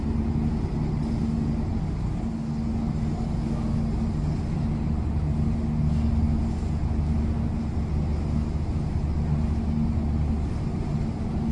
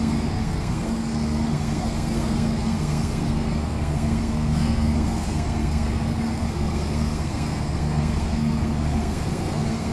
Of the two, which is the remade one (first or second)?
second